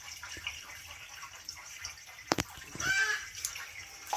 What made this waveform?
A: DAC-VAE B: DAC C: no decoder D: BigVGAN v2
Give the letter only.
D